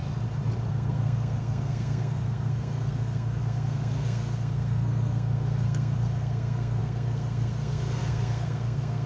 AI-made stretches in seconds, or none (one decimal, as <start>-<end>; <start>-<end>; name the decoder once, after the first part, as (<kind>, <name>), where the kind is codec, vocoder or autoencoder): 0.7-9.1 (codec, SNAC)